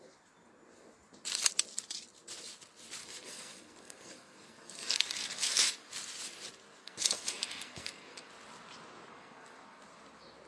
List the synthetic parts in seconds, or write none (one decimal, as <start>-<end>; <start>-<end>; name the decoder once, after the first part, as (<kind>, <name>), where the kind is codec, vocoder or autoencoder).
3.0-5.9 (codec, SNAC); 6.8-8.3; 9.1-9.8